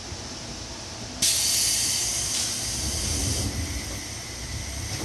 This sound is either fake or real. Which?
real